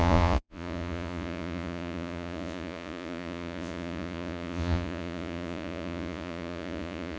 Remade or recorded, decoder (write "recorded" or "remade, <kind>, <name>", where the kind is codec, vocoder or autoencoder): remade, vocoder, Vocos